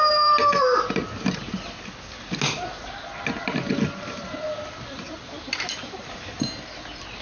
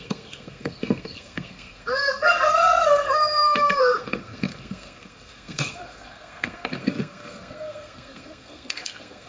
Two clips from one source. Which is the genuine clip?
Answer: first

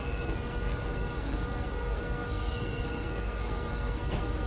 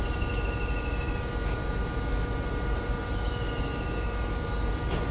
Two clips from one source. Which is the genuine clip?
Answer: second